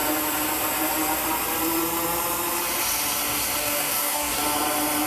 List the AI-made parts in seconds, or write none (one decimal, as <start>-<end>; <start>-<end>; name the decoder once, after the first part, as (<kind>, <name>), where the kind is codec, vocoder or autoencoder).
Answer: 3.6-4.4 (codec, DAC)